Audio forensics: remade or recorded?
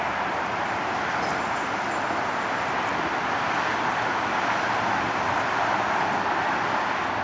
recorded